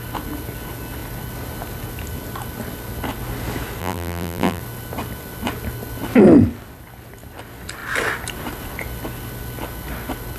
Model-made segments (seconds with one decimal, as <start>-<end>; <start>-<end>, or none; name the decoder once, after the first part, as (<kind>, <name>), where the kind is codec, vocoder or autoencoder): 3.8-4.6 (vocoder, BigVGAN v2)